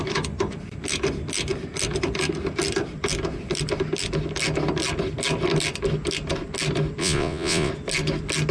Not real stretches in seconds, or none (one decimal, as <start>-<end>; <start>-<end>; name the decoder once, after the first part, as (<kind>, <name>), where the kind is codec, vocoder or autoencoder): 7.0-7.7 (vocoder, Vocos)